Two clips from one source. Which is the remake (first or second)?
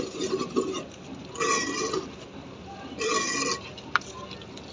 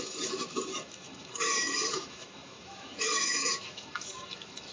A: second